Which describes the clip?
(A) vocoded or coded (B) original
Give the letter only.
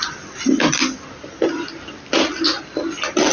B